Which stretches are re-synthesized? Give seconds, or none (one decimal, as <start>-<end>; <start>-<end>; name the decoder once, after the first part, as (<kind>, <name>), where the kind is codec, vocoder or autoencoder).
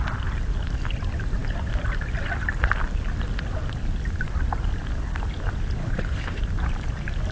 5.8-6.4 (codec, HILCodec)